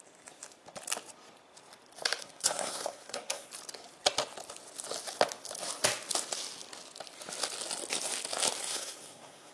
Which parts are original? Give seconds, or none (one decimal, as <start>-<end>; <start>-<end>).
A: 0.0-2.2; 3.5-8.6